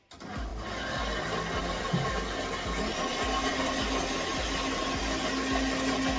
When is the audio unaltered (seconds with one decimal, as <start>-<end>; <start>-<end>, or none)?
0.0-6.2